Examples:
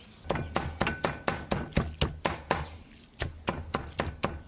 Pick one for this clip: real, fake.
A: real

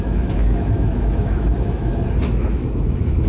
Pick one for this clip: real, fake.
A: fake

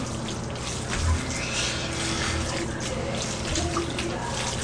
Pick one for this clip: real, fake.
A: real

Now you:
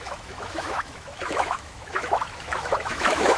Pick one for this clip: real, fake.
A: fake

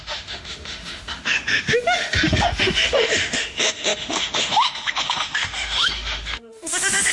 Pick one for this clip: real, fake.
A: fake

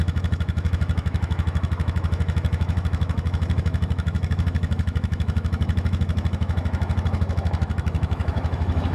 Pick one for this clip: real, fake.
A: fake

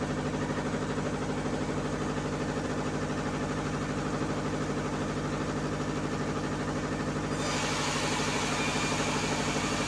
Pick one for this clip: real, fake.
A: real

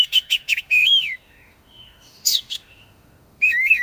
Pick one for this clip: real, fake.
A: fake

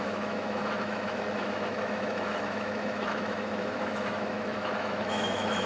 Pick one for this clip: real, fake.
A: fake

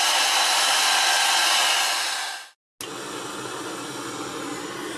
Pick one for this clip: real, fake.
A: real